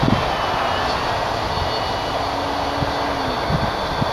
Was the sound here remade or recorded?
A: recorded